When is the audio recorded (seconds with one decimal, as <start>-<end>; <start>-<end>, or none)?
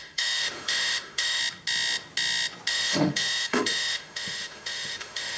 1.4-2.7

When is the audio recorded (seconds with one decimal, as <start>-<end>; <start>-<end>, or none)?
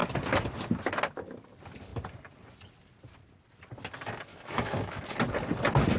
0.0-4.3; 5.0-6.0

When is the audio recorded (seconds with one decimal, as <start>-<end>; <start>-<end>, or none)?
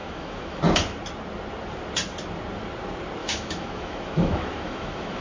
0.6-3.2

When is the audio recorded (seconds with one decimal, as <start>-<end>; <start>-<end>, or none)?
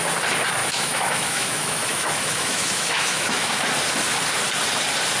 0.0-0.6; 3.6-5.2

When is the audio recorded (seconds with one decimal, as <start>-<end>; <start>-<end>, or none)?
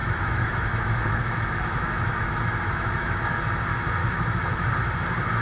3.2-4.0; 4.7-5.4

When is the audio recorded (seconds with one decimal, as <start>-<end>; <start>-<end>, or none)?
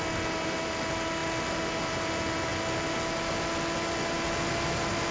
0.0-5.1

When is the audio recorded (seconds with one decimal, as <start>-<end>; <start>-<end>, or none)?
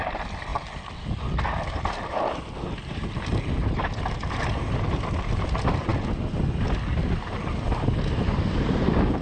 0.0-9.2